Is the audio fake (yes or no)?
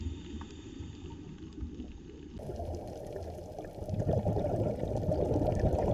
no